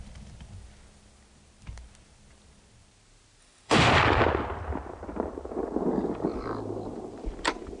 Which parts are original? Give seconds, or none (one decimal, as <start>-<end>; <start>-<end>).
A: 0.0-3.4; 3.9-7.8